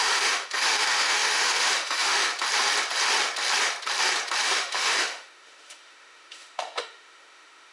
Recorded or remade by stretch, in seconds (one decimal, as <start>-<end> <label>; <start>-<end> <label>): 0.0-2.3 remade; 2.3-4.4 recorded; 4.4-7.7 remade